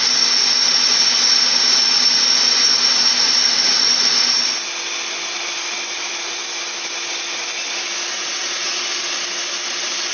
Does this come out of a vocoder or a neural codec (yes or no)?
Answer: no